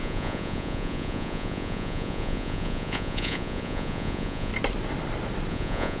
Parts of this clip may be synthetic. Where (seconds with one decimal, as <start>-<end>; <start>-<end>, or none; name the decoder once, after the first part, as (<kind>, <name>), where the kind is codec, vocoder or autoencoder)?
0.0-4.5 (vocoder, Vocos); 5.5-6.0